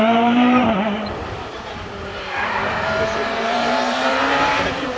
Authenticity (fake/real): fake